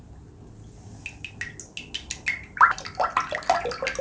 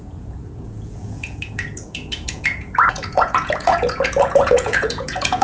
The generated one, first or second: second